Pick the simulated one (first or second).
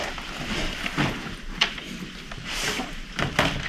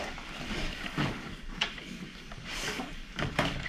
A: second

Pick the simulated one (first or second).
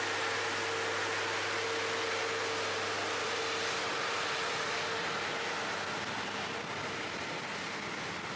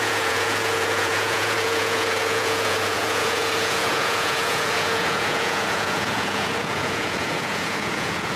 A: second